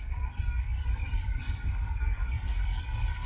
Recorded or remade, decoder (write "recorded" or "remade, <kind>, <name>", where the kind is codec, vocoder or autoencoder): remade, codec, SNAC